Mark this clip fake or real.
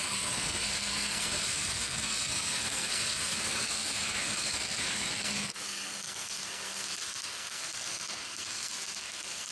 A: fake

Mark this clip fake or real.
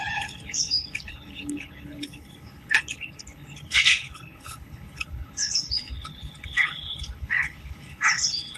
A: fake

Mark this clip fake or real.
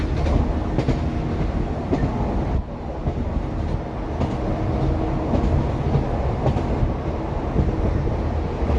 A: real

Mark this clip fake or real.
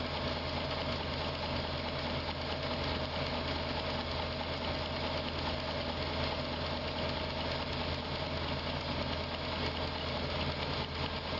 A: real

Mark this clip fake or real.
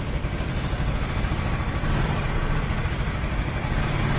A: fake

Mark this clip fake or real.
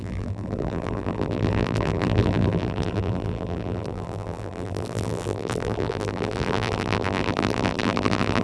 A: fake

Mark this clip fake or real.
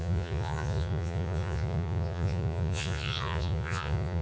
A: fake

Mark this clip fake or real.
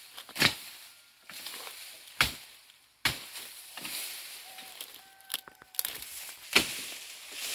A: real